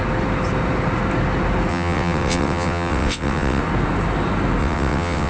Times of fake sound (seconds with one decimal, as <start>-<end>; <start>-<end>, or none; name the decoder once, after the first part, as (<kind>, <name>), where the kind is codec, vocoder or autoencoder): 1.7-3.6 (vocoder, WaveNeXt); 4.6-5.3

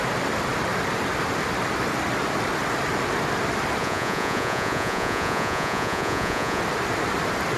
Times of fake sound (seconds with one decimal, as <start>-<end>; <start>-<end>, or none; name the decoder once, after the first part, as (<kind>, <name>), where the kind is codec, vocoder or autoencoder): 3.8-6.6 (vocoder, Vocos)

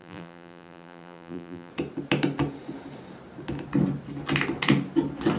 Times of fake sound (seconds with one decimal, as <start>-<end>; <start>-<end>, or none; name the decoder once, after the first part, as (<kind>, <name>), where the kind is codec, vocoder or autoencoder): 0.0-1.7 (vocoder, BigVGAN v2)

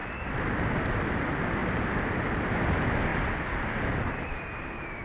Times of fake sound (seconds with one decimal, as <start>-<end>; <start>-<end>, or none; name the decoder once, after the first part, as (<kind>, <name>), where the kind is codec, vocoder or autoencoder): 1.6-2.6 (vocoder, BigVGAN v2); 3.1-4.0

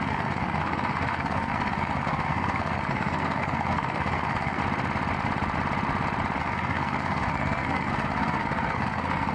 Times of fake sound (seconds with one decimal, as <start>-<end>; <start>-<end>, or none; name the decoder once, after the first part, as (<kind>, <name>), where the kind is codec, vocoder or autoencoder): 0.0-4.6 (codec, SNAC); 6.4-9.3

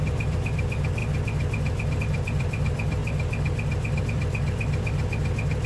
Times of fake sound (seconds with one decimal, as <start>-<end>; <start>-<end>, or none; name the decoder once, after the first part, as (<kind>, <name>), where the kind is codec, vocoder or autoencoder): 0.0-1.0 (vocoder, BigVGAN v2); 2.0-3.0; 4.0-5.7